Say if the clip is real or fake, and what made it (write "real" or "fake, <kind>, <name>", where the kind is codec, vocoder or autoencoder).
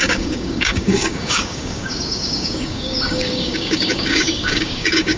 fake, codec, DAC